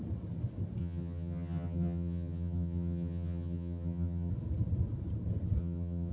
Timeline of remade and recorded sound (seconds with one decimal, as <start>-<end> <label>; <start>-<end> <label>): 0.0-0.8 recorded; 0.8-4.3 remade; 4.3-5.6 recorded; 5.6-6.1 remade